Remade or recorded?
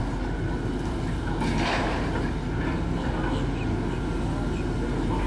recorded